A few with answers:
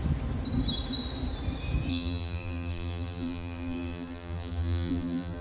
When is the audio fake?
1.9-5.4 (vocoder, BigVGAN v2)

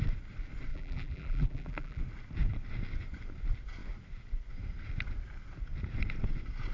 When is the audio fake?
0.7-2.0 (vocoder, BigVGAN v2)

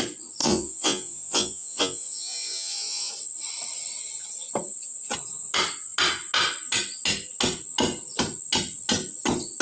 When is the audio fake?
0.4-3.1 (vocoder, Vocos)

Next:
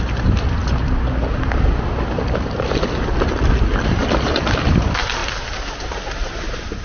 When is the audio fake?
none

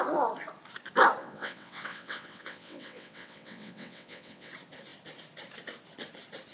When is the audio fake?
1.2-4.5 (vocoder, WaveNeXt)